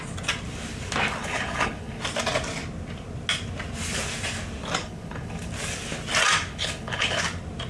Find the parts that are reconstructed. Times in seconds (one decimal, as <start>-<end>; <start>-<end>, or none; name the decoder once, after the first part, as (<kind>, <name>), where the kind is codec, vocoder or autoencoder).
1.2-2.0 (codec, HILCodec); 4.8-5.5; 6.5-7.2